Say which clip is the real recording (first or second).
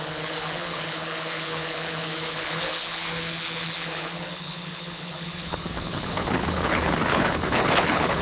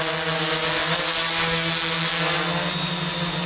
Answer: second